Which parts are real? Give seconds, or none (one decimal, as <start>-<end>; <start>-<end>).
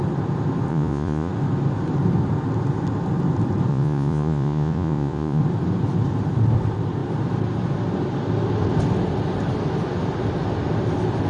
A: 0.0-0.7; 1.3-3.7; 5.4-11.3